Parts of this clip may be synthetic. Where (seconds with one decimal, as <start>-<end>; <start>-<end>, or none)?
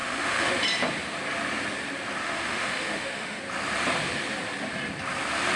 0.0-0.5; 2.2-3.4